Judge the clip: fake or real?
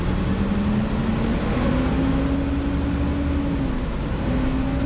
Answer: real